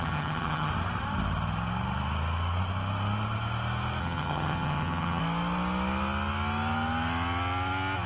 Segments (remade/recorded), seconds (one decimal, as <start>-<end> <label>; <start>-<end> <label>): 0.0-0.7 remade; 0.7-4.0 recorded; 4.0-5.2 remade; 5.2-8.1 recorded